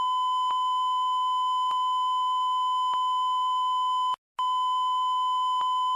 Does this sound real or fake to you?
real